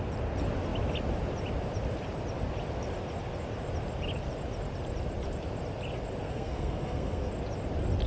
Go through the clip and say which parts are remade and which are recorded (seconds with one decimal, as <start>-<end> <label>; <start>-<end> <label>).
0.0-6.2 recorded; 6.2-7.3 remade; 7.3-8.1 recorded